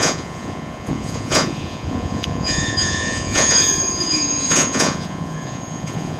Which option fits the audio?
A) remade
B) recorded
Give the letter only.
A